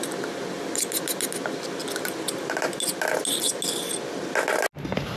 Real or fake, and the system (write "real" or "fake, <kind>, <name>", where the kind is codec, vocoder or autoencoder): real